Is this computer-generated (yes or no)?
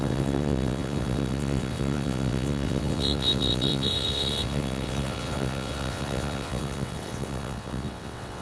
yes